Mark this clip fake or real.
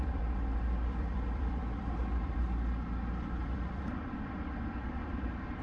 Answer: fake